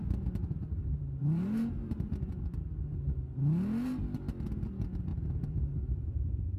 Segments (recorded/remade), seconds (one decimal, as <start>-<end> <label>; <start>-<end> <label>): 0.0-0.8 recorded; 0.8-2.4 remade; 2.4-5.1 recorded; 5.1-6.6 remade